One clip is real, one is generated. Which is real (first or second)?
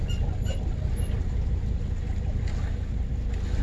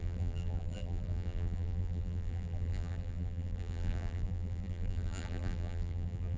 first